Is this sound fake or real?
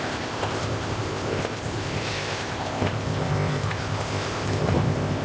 fake